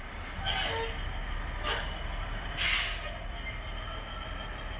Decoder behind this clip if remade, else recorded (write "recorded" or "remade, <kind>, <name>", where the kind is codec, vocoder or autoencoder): recorded